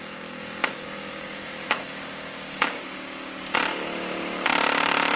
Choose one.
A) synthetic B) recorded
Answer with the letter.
A